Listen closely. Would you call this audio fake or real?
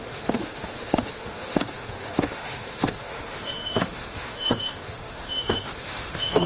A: fake